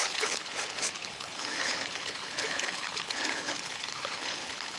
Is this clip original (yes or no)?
no